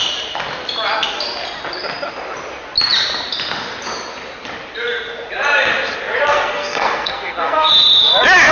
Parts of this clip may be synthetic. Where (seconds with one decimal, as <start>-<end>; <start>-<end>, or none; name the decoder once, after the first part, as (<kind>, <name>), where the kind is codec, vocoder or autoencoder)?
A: 6.3-7.7 (codec, SNAC)